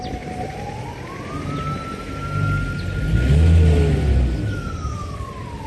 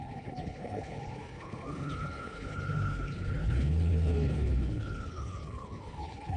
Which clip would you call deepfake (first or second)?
second